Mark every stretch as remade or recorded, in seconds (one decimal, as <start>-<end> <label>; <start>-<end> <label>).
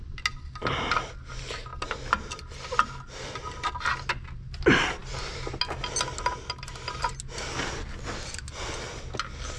0.0-9.6 recorded